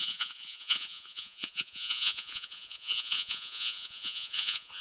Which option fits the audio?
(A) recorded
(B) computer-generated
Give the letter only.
B